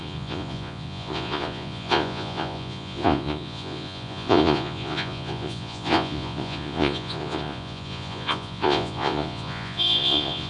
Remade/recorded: remade